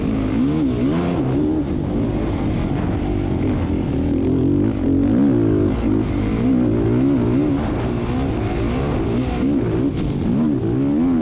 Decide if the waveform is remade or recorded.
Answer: recorded